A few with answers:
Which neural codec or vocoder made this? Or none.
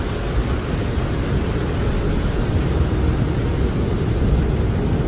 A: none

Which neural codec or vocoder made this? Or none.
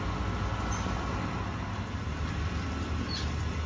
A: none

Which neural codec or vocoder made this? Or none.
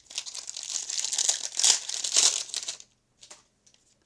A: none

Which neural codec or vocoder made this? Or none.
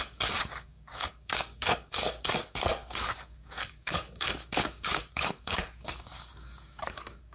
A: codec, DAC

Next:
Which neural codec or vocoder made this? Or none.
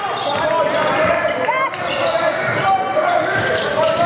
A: none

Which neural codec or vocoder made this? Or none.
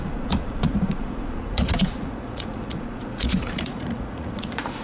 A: vocoder, Vocos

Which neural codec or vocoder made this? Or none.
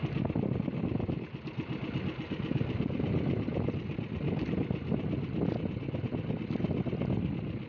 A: none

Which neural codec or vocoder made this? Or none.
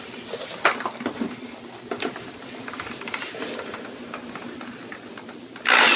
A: none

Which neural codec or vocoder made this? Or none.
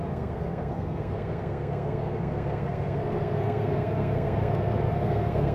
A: codec, SNAC